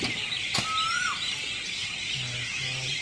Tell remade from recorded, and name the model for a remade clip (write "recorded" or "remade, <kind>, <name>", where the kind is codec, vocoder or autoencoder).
recorded